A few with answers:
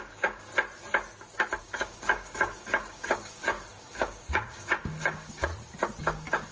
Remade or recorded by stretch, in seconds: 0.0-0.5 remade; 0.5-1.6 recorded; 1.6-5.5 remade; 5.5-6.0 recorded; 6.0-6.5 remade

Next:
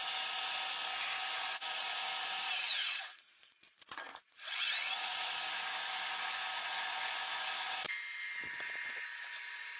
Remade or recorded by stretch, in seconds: 0.0-2.7 recorded; 2.7-5.3 remade; 5.3-9.8 recorded

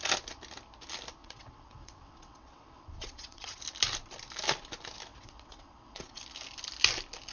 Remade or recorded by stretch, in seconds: 0.0-1.2 recorded; 1.2-3.6 remade; 3.6-5.1 recorded; 5.1-6.2 remade; 6.2-7.3 recorded

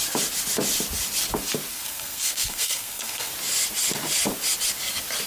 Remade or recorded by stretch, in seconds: 0.0-1.7 recorded; 1.7-3.3 remade; 3.3-5.3 recorded